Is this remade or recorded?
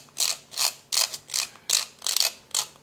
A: recorded